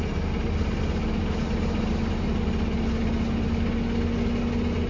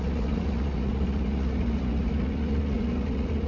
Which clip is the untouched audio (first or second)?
first